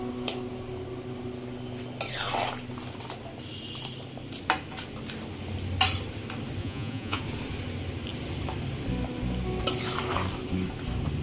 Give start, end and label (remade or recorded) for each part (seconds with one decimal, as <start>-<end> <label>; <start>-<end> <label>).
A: 0.0-6.6 recorded; 6.6-7.2 remade; 7.2-11.2 recorded